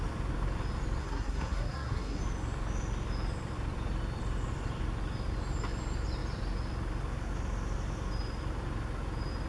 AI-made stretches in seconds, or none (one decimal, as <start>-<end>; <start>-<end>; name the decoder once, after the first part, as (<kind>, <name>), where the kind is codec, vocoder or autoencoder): 1.0-2.2 (codec, SNAC)